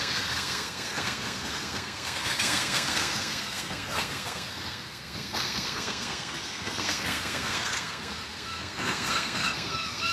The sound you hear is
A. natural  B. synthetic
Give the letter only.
B